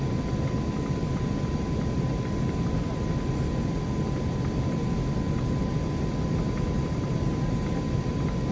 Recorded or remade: recorded